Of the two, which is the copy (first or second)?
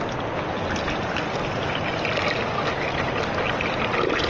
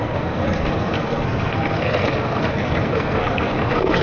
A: second